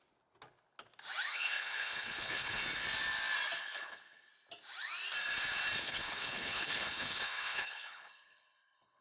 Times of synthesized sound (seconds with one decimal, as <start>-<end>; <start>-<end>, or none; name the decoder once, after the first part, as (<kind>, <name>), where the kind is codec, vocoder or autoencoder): 1.3-2.6 (codec, HILCodec); 3.6-4.3; 5.8-9.0